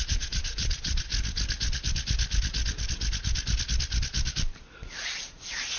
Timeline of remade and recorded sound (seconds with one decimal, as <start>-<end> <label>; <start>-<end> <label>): 0.0-1.1 remade; 1.1-4.6 recorded; 4.6-5.8 remade